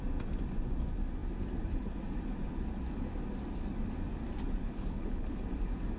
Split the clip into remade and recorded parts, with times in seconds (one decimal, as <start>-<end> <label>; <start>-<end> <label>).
0.0-4.6 recorded; 4.6-5.4 remade; 5.4-6.0 recorded